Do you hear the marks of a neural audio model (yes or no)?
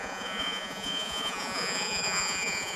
yes